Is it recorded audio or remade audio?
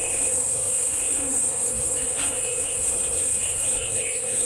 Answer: remade